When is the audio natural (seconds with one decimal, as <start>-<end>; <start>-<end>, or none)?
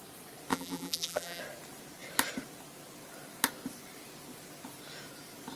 0.0-0.5; 1.4-5.6